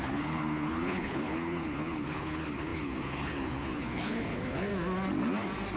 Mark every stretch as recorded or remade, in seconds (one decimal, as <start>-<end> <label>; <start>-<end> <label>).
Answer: 0.0-4.7 remade; 4.7-5.8 recorded